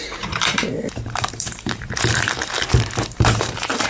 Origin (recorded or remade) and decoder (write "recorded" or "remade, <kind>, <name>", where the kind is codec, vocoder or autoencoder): remade, vocoder, BigVGAN v2